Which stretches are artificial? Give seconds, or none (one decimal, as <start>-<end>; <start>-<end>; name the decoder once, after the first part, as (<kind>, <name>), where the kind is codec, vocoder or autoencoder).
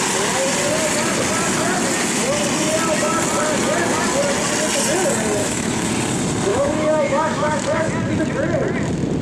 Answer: 5.4-5.9 (autoencoder, DAC-VAE); 6.5-7.9